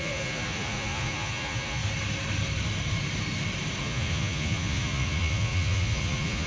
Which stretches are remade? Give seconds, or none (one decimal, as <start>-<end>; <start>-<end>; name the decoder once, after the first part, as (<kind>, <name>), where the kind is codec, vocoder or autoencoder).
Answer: 0.0-1.8 (vocoder, Vocos); 3.8-6.5